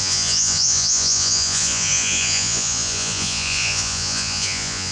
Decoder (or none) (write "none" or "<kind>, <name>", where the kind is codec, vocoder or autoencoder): vocoder, Vocos